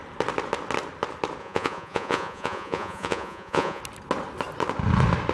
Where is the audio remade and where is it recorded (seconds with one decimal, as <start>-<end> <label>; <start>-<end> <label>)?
0.0-1.4 recorded; 1.4-3.8 remade; 3.8-5.3 recorded